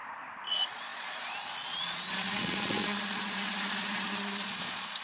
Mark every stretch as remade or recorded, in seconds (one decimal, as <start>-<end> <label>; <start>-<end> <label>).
0.0-0.5 recorded; 0.5-5.0 remade